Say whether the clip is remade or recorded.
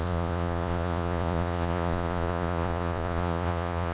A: remade